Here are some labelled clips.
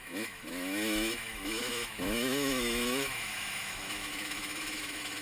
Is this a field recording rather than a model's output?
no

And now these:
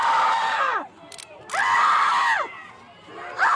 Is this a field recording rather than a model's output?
yes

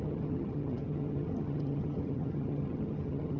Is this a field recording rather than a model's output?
no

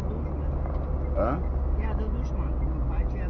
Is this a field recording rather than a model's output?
yes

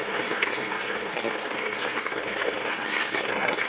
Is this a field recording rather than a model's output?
no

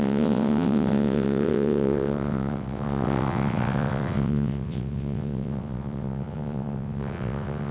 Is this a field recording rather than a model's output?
no